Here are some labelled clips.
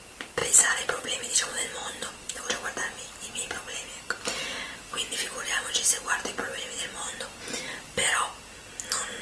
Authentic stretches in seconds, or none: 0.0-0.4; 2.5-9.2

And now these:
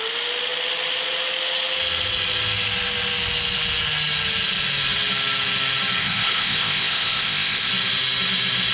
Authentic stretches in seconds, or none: 0.0-6.0; 7.7-8.7